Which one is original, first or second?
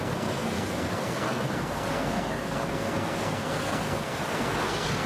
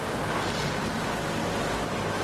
second